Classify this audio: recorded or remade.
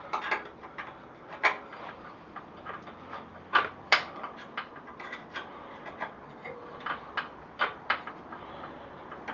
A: recorded